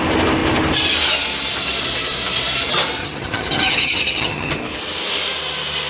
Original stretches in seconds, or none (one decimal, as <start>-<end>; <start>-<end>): 0.0-3.0; 4.5-5.9